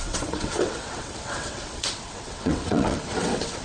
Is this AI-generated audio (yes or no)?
yes